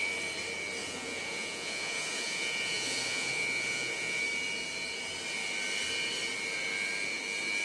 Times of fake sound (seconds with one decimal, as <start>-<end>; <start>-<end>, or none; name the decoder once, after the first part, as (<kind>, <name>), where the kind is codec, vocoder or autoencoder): 0.8-4.2 (vocoder, Vocos)